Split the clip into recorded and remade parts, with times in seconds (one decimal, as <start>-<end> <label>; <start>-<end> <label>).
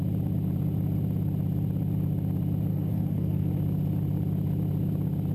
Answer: 0.0-2.7 recorded; 2.7-3.5 remade; 3.5-5.3 recorded